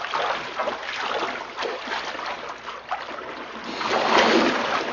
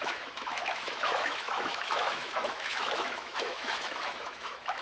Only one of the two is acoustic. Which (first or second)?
first